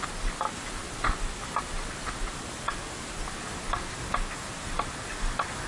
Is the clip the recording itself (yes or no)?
yes